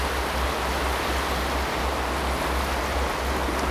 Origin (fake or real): real